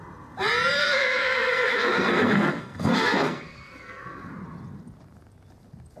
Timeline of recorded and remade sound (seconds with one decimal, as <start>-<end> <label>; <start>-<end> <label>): 0.0-0.8 recorded; 0.8-4.3 remade; 4.3-6.0 recorded